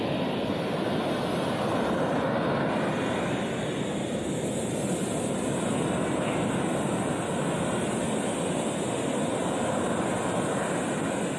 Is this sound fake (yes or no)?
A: no